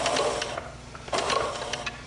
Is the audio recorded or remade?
remade